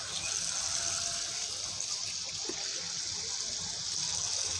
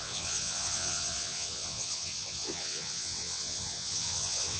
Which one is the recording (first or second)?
first